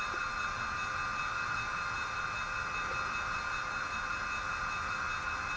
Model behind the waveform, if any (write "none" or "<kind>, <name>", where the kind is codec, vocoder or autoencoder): none